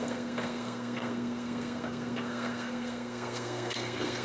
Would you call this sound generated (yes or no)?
yes